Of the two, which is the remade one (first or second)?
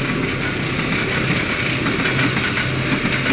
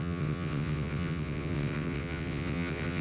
second